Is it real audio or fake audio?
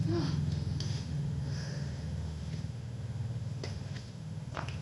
fake